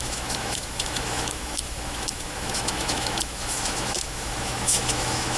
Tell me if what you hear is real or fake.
fake